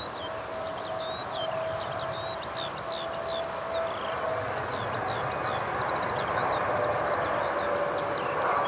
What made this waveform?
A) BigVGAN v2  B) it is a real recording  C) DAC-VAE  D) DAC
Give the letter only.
B